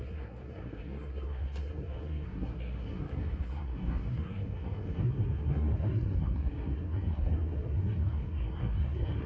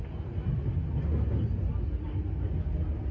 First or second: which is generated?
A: first